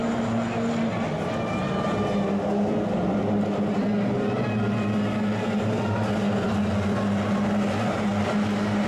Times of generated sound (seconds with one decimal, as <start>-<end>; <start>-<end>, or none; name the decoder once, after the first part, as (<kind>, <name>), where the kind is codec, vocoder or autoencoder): none